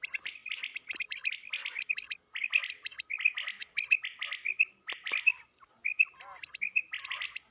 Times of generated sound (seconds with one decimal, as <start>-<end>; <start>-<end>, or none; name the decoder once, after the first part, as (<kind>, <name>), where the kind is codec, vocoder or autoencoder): none